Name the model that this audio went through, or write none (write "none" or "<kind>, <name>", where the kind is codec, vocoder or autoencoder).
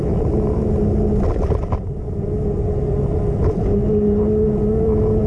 none